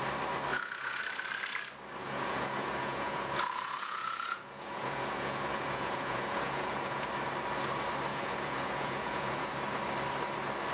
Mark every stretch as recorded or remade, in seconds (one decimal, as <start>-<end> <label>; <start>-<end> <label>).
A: 0.0-0.5 recorded; 0.5-1.0 remade; 1.0-2.0 recorded; 2.0-7.1 remade; 7.1-8.1 recorded; 8.1-9.5 remade; 9.5-10.7 recorded